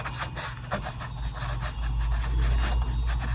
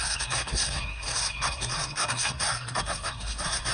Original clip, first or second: first